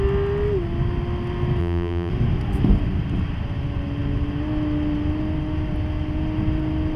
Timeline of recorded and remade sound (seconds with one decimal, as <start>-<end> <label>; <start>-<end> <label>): 0.0-1.6 recorded; 1.6-2.1 remade; 2.1-7.0 recorded